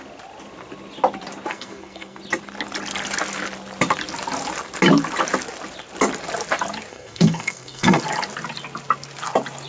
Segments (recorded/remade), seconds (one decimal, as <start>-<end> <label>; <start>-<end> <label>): 0.0-1.5 recorded; 1.5-2.2 remade; 2.2-6.9 recorded; 6.9-8.0 remade; 8.0-9.7 recorded